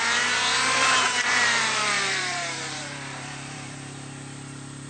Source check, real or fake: fake